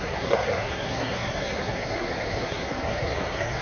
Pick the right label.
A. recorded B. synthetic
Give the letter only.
B